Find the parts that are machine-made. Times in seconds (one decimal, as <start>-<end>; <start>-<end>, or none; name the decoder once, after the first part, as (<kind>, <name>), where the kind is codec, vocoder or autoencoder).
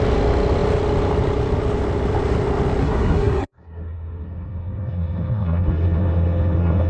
2.8-6.9 (codec, SNAC)